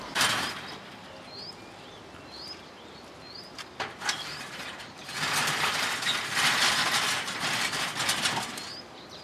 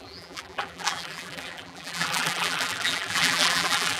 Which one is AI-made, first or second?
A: second